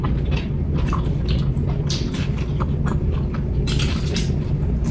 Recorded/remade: recorded